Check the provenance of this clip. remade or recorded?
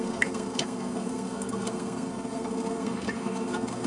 remade